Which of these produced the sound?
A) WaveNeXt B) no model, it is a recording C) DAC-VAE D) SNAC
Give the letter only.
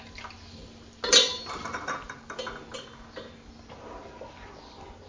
B